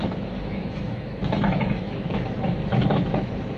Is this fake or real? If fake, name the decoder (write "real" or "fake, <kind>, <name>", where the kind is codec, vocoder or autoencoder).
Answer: fake, autoencoder, DAC-VAE